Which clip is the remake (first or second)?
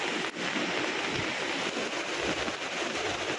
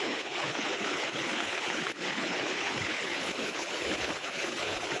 second